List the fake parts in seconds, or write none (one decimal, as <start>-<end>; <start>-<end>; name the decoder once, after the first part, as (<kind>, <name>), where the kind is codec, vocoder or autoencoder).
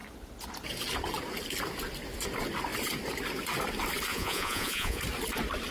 4.1-5.0 (vocoder, Vocos)